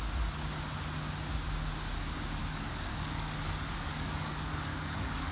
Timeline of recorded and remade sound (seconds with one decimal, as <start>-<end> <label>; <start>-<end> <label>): 0.0-2.4 recorded; 2.4-5.3 remade

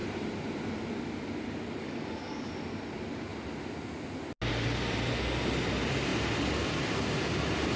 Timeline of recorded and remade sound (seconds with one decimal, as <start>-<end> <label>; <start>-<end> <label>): 0.0-1.8 recorded; 1.8-2.5 remade; 2.5-7.8 recorded

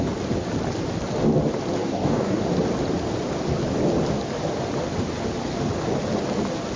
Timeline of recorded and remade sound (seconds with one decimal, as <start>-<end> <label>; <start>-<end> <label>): 0.0-1.8 recorded; 1.8-2.4 remade; 2.4-6.8 recorded

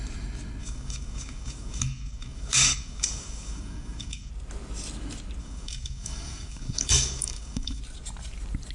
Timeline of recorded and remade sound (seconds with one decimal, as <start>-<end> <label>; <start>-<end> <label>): 0.0-0.6 recorded; 0.6-4.3 remade; 4.3-5.4 recorded; 5.4-7.8 remade; 7.8-8.7 recorded

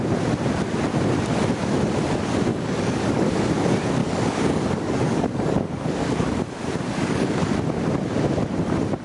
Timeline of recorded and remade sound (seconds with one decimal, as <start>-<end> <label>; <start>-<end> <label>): 0.0-2.5 recorded; 2.5-3.5 remade; 3.5-4.0 recorded; 4.0-6.4 remade; 6.4-7.0 recorded; 7.0-7.5 remade; 7.5-9.0 recorded

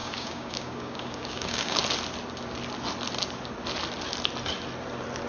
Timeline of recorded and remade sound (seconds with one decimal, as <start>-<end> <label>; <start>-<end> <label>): 0.0-1.8 remade; 1.8-5.3 recorded

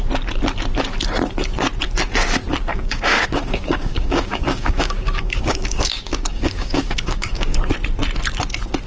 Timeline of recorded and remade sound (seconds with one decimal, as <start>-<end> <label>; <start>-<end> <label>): 0.0-2.7 recorded; 2.7-7.6 remade; 7.6-8.9 recorded

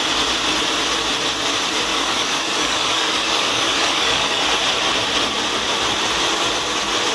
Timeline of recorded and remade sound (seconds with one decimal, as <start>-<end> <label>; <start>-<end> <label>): 0.0-1.9 recorded; 1.9-4.4 remade; 4.4-7.1 recorded